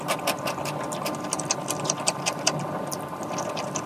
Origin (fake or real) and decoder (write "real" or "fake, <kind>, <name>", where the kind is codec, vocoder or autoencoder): real